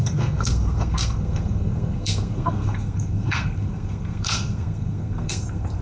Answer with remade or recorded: remade